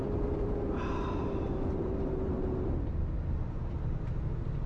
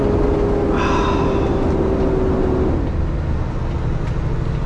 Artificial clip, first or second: first